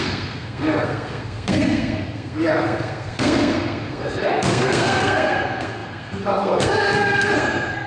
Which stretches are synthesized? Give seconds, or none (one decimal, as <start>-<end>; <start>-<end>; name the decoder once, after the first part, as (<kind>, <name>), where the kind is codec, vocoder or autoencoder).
0.0-7.9 (codec, SNAC)